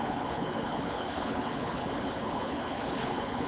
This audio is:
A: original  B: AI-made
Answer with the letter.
B